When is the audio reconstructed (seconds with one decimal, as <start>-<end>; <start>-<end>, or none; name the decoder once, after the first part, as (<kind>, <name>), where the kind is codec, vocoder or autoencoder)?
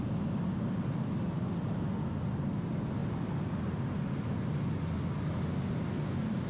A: none